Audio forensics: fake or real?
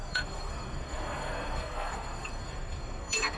fake